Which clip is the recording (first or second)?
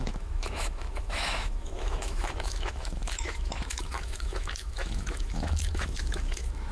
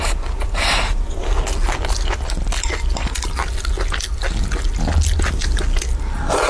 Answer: second